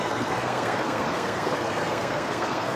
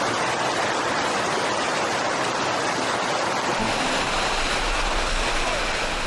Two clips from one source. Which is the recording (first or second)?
second